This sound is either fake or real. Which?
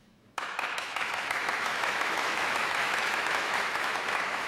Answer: fake